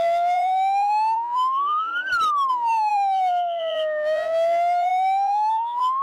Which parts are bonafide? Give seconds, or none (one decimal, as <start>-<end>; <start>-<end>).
1.9-2.5